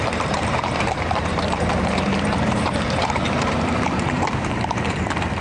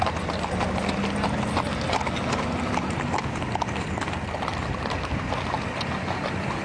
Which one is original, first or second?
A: second